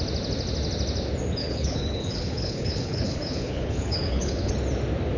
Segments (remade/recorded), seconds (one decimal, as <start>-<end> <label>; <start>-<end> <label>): 0.0-1.4 recorded; 1.4-4.5 remade; 4.5-5.2 recorded